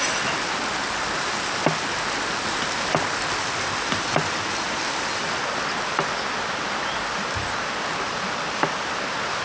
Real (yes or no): yes